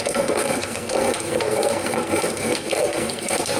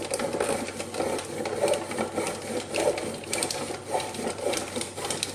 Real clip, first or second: second